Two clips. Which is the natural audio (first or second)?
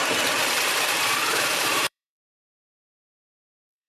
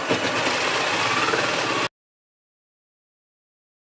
second